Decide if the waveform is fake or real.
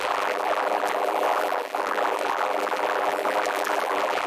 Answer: fake